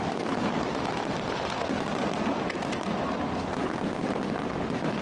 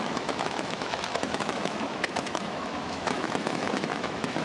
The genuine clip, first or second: first